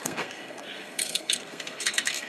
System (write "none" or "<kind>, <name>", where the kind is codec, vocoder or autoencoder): codec, SNAC